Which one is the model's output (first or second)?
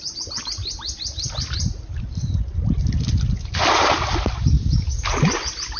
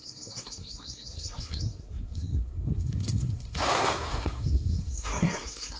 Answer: second